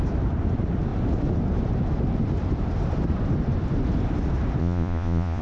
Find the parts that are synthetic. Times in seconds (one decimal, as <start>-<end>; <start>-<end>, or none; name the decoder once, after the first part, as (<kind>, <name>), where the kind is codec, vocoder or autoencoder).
4.6-5.4 (vocoder, Vocos)